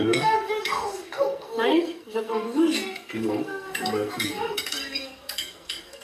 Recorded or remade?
remade